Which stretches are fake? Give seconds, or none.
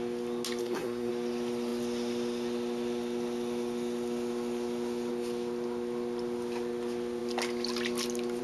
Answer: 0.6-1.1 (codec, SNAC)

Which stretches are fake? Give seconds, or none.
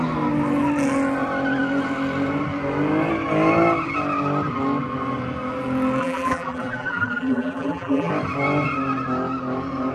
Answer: 6.0-8.1 (vocoder, BigVGAN v2)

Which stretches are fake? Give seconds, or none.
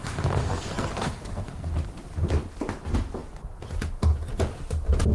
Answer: 0.0-1.7 (codec, SNAC)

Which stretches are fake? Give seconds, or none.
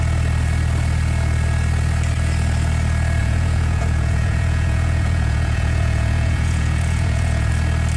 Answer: 3.2-7.5 (vocoder, Vocos)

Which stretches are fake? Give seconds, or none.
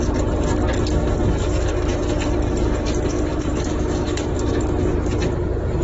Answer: 1.0-1.7 (autoencoder, DAC-VAE); 3.3-4.9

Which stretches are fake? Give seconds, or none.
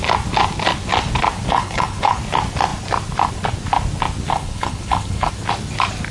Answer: 1.5-2.2 (codec, HILCodec); 4.3-5.3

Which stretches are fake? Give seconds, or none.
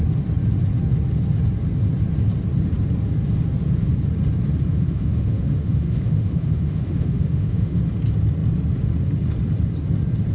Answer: 4.7-7.8 (autoencoder, DAC-VAE)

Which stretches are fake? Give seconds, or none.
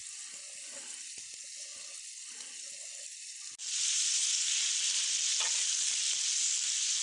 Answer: none